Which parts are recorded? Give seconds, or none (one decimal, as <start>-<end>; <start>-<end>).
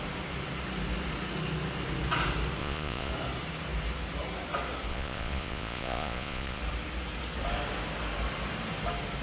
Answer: 0.0-2.6; 3.1-4.9; 6.6-9.2